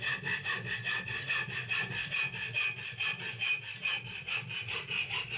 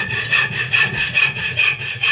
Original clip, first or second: first